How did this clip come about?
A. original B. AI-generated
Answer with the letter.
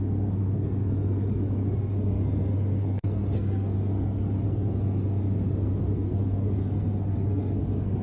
B